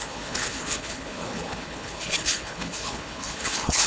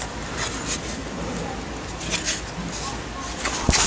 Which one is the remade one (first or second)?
first